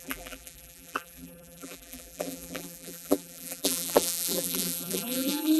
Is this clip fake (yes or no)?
yes